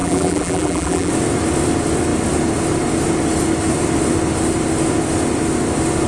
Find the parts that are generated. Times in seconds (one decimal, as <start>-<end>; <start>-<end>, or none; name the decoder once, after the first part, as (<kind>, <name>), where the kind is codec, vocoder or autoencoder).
0.0-1.1 (vocoder, BigVGAN v2)